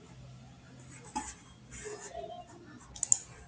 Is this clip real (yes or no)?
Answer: yes